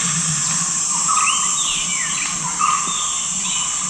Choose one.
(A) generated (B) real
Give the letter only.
B